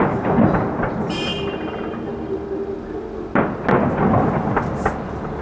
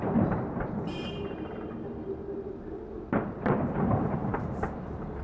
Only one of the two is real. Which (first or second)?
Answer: first